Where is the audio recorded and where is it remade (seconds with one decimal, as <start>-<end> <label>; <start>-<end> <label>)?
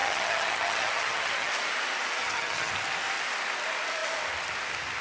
0.0-1.5 remade; 1.5-2.2 recorded; 2.2-2.7 remade; 2.7-5.0 recorded